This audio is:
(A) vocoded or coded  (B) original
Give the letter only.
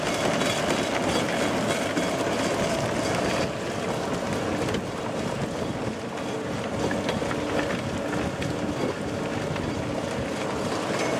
B